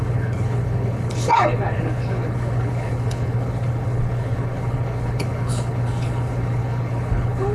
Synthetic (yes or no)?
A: yes